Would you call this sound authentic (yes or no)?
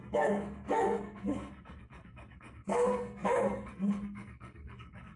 no